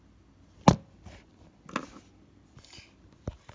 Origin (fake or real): real